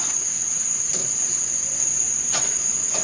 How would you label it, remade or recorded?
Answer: remade